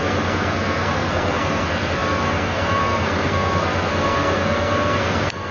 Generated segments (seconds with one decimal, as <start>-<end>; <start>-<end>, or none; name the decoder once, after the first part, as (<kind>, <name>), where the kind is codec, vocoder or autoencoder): 0.0-5.5 (codec, SNAC)